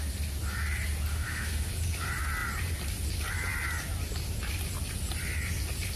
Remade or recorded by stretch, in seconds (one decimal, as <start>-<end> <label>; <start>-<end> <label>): 0.0-1.1 recorded; 1.1-1.7 remade; 1.7-6.0 recorded

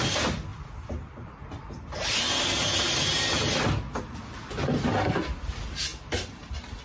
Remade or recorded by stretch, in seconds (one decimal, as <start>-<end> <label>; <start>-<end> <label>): 0.0-6.8 recorded

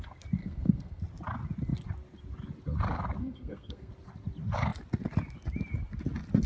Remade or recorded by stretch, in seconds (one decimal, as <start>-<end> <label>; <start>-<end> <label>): 0.0-0.4 recorded; 0.4-1.0 remade; 1.0-3.2 recorded; 3.2-3.9 remade; 3.9-6.5 recorded

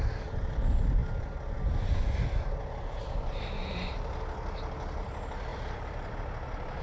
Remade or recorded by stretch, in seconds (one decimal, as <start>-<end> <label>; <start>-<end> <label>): 0.0-3.6 recorded; 3.6-4.2 remade; 4.2-5.5 recorded; 5.5-6.1 remade; 6.1-6.8 recorded

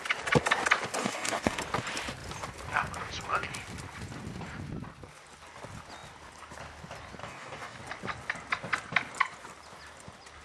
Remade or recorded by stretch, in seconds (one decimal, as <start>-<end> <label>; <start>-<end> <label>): 0.0-1.0 recorded; 1.0-1.6 remade; 1.6-7.2 recorded; 7.2-7.8 remade; 7.8-10.4 recorded